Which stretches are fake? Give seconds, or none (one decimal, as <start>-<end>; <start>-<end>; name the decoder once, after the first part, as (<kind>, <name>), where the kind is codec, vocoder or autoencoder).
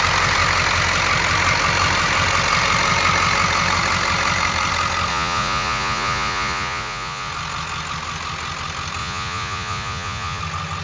5.1-7.3 (vocoder, Vocos); 9.0-10.4